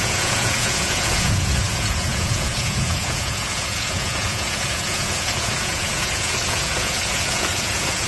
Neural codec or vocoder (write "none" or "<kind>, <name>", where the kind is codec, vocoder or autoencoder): vocoder, Vocos